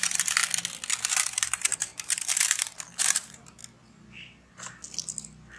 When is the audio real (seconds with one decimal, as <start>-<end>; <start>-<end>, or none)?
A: 0.4-1.3; 3.6-5.6